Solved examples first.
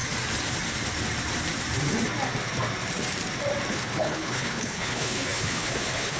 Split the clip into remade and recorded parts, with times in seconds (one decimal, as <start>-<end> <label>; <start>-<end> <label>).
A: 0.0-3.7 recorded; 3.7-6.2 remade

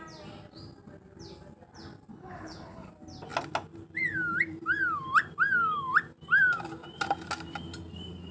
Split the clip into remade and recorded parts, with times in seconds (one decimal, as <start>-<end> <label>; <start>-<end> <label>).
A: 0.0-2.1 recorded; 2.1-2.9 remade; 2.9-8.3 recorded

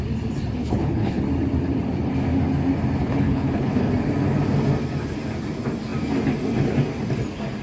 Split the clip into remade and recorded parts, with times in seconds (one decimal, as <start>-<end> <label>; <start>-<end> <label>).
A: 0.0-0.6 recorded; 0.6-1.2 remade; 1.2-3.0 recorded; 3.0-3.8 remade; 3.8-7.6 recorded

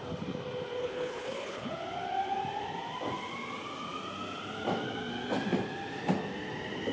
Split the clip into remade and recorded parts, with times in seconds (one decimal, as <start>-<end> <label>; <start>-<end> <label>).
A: 0.0-0.8 recorded; 0.8-1.7 remade; 1.7-6.9 recorded

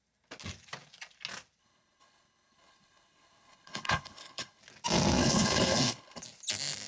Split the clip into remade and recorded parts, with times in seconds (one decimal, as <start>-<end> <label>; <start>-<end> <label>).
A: 0.0-1.6 recorded; 1.6-4.6 remade; 4.6-5.2 recorded; 5.2-6.2 remade; 6.2-6.9 recorded

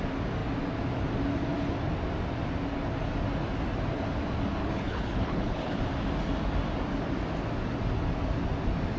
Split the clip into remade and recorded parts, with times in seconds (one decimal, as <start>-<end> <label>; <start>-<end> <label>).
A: 0.0-4.6 recorded; 4.6-5.8 remade; 5.8-9.0 recorded